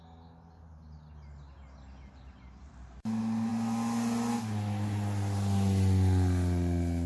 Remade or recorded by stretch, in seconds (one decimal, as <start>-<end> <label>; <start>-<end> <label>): 0.0-7.1 recorded